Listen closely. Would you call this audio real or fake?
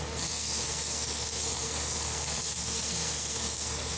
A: fake